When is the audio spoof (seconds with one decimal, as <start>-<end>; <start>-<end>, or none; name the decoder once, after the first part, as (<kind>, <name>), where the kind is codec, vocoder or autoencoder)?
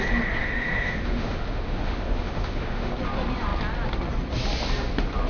0.4-2.9 (autoencoder, DAC-VAE)